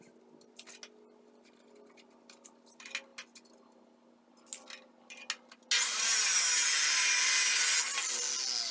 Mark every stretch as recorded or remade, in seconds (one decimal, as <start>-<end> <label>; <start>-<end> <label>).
0.0-8.7 recorded